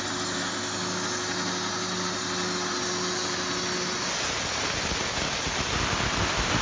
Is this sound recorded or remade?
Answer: recorded